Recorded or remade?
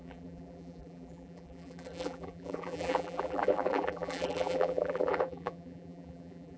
remade